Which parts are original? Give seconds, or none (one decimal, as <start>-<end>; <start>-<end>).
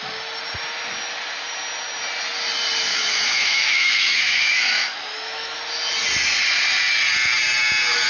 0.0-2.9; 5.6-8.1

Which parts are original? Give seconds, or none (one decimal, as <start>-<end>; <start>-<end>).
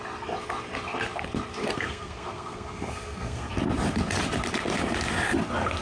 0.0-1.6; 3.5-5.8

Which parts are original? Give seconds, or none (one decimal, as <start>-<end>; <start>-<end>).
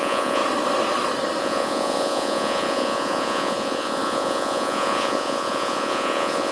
0.4-1.4